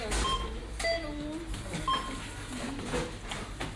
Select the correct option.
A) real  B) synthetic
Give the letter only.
A